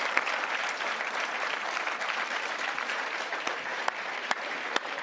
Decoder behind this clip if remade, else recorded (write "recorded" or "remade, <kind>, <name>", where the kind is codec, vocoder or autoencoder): remade, vocoder, BigVGAN v2